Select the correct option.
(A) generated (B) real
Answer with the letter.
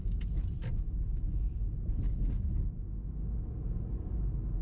B